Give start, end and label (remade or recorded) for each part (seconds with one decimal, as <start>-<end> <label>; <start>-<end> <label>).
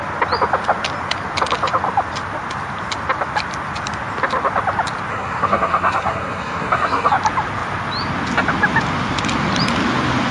0.0-5.1 recorded; 5.1-7.1 remade; 7.1-10.3 recorded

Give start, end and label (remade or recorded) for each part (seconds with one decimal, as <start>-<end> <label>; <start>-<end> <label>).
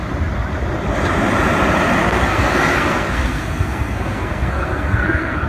0.0-2.0 recorded; 2.0-5.5 remade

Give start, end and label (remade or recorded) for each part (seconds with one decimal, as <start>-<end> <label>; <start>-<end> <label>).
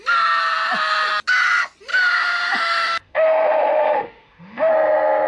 0.0-1.9 recorded; 1.9-4.7 remade; 4.7-5.3 recorded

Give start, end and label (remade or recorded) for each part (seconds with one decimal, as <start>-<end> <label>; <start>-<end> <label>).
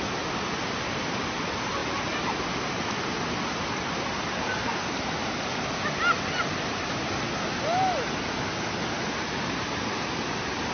0.0-10.7 recorded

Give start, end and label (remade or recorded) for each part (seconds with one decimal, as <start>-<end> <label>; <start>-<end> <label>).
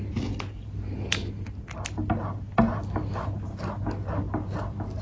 0.0-5.0 recorded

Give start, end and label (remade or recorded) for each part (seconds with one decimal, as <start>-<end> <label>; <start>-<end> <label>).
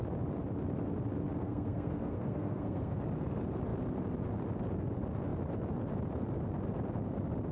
0.0-1.4 recorded; 1.4-3.0 remade; 3.0-7.5 recorded